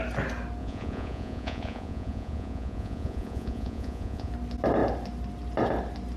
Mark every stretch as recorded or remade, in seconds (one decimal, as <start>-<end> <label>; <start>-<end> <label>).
0.0-0.6 recorded; 0.6-4.3 remade; 4.3-6.2 recorded